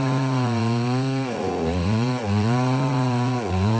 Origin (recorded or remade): remade